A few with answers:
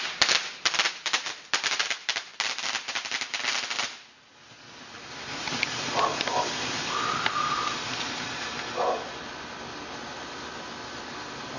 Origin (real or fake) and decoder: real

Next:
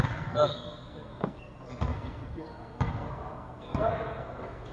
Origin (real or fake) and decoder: fake, codec, SNAC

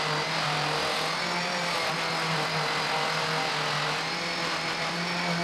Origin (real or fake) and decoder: real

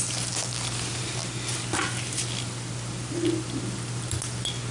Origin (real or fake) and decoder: real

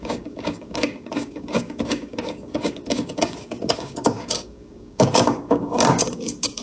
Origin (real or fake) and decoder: fake, codec, DAC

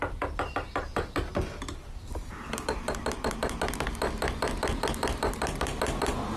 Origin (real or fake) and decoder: real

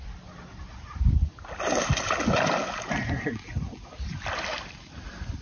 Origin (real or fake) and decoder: real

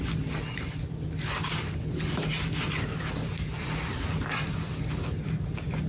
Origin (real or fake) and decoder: real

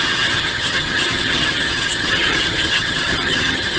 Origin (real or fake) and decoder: fake, vocoder, HiFi-GAN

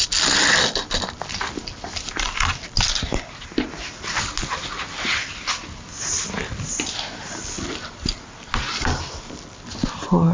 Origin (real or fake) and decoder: real